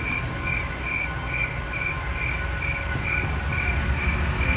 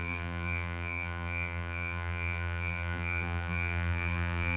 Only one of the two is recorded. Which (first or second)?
first